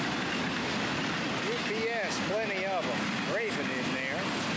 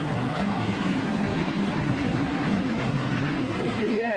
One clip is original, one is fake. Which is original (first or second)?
first